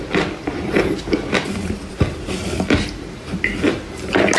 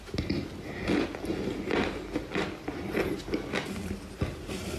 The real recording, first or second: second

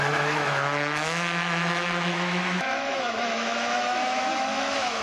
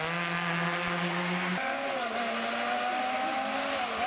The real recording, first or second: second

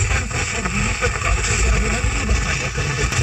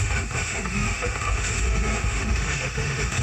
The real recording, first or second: first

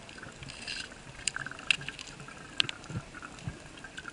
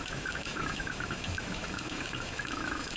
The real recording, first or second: first